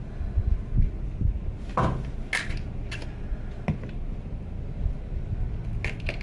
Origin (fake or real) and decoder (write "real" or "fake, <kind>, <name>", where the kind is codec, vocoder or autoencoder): real